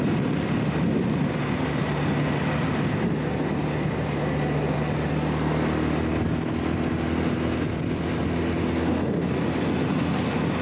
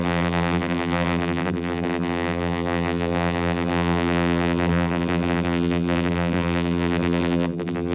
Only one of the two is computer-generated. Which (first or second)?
second